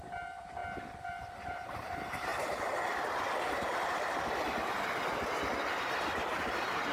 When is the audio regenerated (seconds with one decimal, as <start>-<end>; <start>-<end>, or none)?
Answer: 0.0-0.6; 1.1-2.3; 6.4-6.9